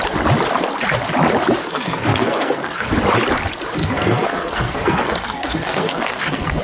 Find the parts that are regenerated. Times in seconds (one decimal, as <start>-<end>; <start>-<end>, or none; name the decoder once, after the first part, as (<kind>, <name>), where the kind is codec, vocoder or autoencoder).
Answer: 1.6-2.9 (codec, SNAC); 3.8-6.6